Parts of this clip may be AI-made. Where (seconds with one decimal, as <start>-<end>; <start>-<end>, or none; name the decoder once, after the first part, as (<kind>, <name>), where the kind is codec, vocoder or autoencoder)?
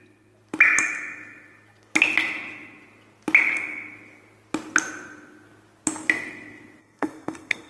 6.8-7.7 (codec, SNAC)